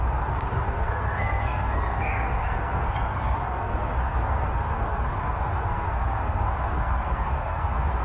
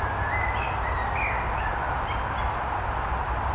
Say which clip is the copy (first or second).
first